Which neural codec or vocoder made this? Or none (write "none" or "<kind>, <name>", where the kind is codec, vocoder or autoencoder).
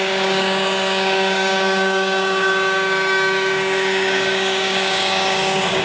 codec, DAC